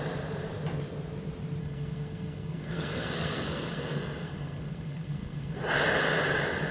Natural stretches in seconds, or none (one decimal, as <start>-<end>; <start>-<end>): 0.0-1.6; 5.6-6.7